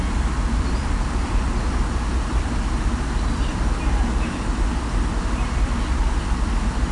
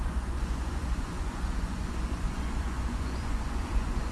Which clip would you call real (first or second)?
first